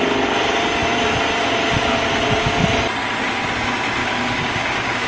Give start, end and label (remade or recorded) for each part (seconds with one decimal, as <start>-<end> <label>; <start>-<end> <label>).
0.0-4.0 recorded; 4.0-5.1 remade